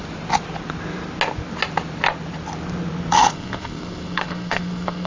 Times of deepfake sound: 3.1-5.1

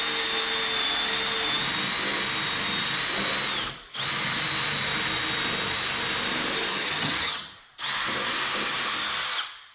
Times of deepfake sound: 6.7-7.6